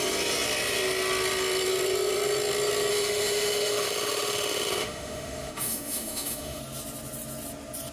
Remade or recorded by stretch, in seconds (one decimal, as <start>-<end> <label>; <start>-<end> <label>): 0.0-2.9 recorded; 2.9-6.6 remade; 6.6-7.9 recorded